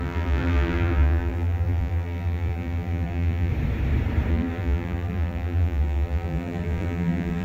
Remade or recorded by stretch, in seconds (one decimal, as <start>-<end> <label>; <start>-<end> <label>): 0.0-3.5 remade; 3.5-4.3 recorded; 4.3-7.4 remade